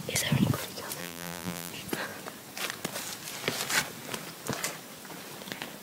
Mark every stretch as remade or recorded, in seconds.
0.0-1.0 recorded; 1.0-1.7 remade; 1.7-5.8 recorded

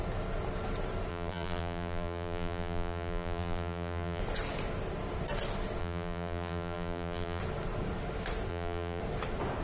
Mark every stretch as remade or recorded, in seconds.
0.0-1.1 recorded; 1.1-4.2 remade; 4.2-5.8 recorded; 5.8-7.4 remade; 7.4-8.5 recorded; 8.5-9.0 remade; 9.0-9.6 recorded

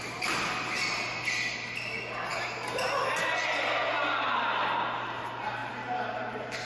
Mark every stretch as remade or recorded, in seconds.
0.0-5.6 recorded; 5.6-6.6 remade

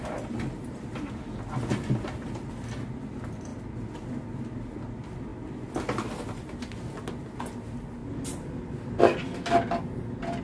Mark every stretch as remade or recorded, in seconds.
0.0-10.4 recorded